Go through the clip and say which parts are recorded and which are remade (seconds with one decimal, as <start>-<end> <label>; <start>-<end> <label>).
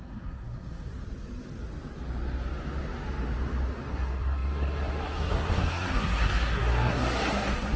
0.0-0.9 remade; 0.9-3.9 recorded; 3.9-7.8 remade